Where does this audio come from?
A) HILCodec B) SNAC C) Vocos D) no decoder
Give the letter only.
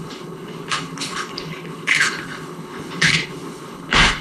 A